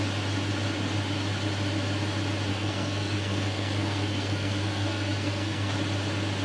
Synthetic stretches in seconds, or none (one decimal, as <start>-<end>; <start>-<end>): 2.5-5.7